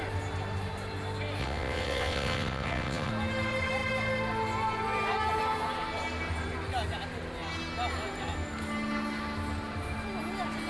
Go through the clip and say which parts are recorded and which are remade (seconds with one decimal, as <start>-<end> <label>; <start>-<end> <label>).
0.0-1.4 recorded; 1.4-3.1 remade; 3.1-10.7 recorded